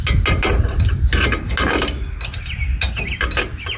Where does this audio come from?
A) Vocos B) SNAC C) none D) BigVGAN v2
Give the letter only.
C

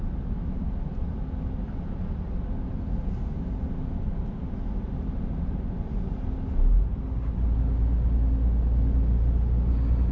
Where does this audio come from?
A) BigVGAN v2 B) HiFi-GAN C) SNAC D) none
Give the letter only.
D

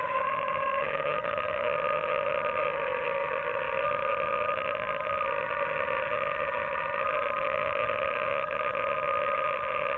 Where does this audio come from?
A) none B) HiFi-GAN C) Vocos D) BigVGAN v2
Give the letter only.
B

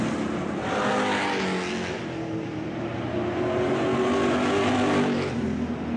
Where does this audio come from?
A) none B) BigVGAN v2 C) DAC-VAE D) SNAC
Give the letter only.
A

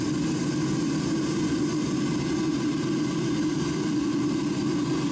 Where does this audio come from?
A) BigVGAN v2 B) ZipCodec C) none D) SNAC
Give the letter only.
C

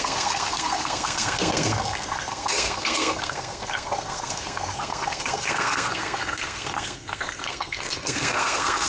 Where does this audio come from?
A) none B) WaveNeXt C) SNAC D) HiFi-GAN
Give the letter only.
C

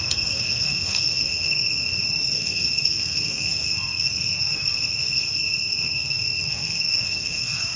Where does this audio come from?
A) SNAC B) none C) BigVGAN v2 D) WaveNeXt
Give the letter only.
A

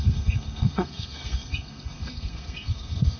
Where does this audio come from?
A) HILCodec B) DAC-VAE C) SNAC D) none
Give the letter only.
C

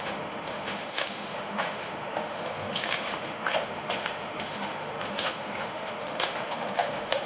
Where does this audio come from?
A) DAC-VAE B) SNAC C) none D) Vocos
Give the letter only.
A